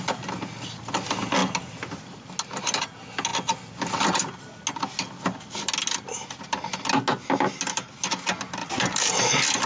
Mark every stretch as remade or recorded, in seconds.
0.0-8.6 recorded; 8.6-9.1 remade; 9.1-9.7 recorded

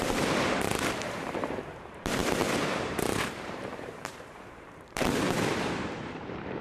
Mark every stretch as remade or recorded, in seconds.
0.0-2.2 remade; 2.2-2.8 recorded; 2.8-6.6 remade

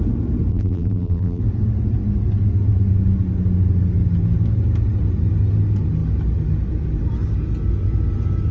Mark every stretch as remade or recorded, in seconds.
0.0-0.5 recorded; 0.5-1.4 remade; 1.4-8.5 recorded

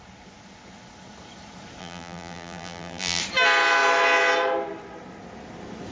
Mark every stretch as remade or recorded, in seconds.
0.0-1.8 recorded; 1.8-3.2 remade; 3.2-5.9 recorded

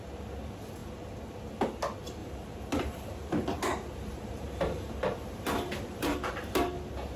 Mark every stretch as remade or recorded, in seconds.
0.0-2.2 recorded; 2.2-6.3 remade; 6.3-7.2 recorded

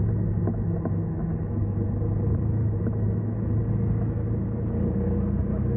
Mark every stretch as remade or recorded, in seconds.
0.0-5.8 recorded

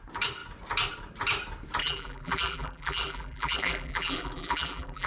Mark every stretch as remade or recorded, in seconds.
0.0-1.8 recorded; 1.8-5.1 remade